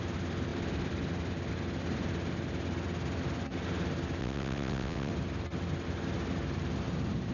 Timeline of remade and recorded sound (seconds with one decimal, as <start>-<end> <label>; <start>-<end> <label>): 0.0-4.2 recorded; 4.2-5.1 remade; 5.1-7.3 recorded